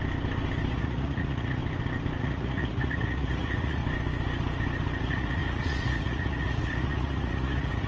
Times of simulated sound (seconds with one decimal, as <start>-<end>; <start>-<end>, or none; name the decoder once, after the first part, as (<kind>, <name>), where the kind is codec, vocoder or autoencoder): 0.7-1.6 (vocoder, Vocos); 2.2-3.8; 5.0-7.9

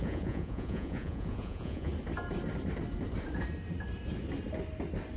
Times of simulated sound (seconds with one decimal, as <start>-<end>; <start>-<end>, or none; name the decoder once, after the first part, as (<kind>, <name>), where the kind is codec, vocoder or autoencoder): 0.0-1.9 (vocoder, Vocos)

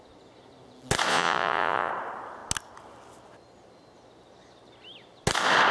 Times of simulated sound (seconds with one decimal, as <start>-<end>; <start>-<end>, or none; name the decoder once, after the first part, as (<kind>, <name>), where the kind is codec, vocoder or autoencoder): 1.1-1.9 (vocoder, Vocos)

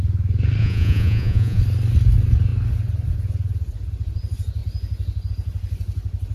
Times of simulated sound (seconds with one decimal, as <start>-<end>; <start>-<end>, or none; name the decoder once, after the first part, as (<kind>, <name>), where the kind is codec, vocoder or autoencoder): 0.6-1.6 (vocoder, Vocos)

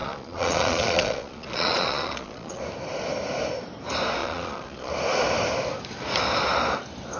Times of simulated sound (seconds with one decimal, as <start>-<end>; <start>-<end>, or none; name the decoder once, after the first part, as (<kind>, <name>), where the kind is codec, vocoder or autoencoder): 0.0-2.6 (vocoder, Vocos); 4.2-4.9

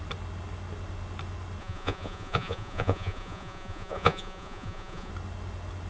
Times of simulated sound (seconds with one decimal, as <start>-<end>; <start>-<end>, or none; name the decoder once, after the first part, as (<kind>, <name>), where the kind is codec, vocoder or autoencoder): 1.6-5.1 (vocoder, Vocos)

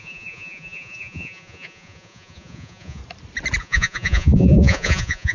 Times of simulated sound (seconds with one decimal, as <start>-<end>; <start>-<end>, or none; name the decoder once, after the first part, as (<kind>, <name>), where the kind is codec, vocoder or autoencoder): 0.0-3.0 (vocoder, Vocos); 3.6-5.3

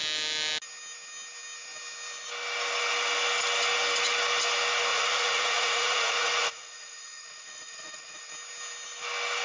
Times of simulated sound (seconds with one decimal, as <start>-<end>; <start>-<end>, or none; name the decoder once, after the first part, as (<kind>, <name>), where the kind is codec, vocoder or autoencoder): 4.9-8.3 (vocoder, Vocos)